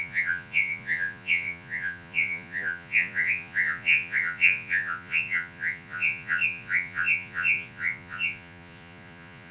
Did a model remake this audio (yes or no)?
yes